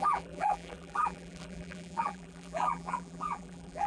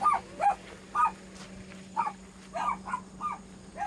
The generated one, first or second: first